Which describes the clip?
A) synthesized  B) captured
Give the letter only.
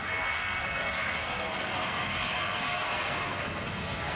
A